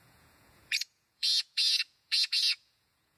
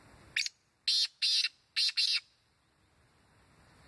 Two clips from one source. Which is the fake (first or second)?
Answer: first